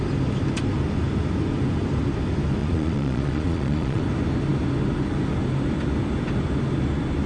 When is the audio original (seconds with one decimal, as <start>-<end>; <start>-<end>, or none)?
0.0-2.6; 4.0-7.3